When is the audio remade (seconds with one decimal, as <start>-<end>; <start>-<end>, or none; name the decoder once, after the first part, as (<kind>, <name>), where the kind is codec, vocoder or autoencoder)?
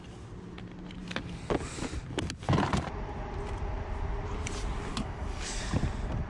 4.9-5.6 (codec, DAC)